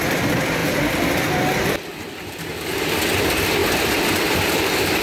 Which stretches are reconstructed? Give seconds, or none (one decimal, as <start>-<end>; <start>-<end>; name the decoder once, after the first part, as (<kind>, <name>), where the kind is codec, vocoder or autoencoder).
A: 0.6-3.0 (vocoder, BigVGAN v2); 3.6-5.0